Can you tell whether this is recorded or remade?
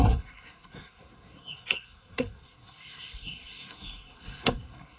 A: remade